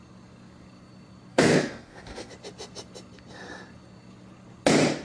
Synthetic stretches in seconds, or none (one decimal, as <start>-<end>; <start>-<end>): 1.3-2.3